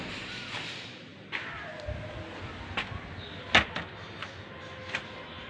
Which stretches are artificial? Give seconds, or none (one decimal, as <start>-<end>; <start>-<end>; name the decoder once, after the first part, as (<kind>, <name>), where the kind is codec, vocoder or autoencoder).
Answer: none